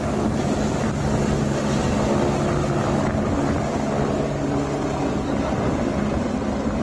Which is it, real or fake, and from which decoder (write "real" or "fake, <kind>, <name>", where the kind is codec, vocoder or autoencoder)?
real